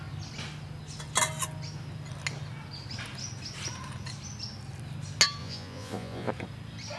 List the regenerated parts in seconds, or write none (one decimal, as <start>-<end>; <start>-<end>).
5.4-6.3